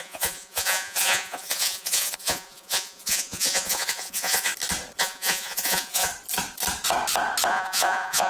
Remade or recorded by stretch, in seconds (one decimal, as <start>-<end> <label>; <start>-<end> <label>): 0.0-4.5 remade; 4.5-5.0 recorded; 5.0-6.1 remade; 6.1-7.5 recorded; 7.5-8.3 remade